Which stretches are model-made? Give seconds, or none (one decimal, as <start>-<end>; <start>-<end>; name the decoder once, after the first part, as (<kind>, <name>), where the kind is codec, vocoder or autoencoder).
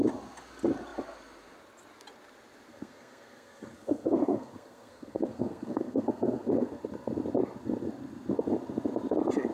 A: 2.7-6.8 (codec, SNAC)